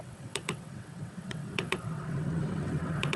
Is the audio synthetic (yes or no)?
yes